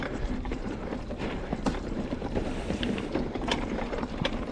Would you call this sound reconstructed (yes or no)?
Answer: yes